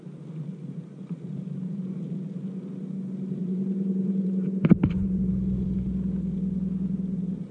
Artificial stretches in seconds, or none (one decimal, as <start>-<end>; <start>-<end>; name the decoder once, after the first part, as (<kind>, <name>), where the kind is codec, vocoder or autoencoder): 0.9-1.9 (vocoder, BigVGAN v2); 3.4-5.3